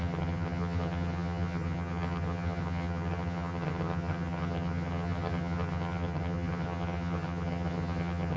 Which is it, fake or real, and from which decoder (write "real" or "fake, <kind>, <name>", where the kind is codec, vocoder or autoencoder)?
fake, vocoder, HiFi-GAN